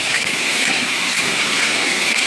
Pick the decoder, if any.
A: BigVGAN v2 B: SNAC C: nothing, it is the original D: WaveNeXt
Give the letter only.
B